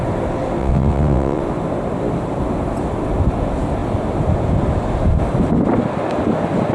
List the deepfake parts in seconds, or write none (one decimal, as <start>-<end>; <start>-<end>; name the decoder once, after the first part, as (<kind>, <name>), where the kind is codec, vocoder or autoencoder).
0.6-1.4 (vocoder, WaveNeXt)